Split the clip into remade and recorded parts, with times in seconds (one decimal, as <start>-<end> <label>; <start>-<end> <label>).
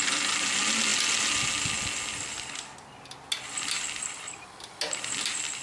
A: 0.0-5.6 recorded